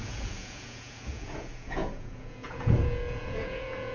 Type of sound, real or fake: fake